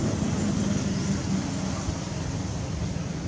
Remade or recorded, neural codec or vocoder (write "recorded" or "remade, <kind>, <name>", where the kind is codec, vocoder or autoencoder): recorded